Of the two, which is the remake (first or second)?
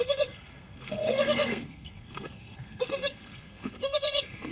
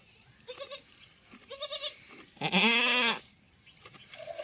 first